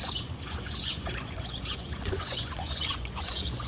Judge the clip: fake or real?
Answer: fake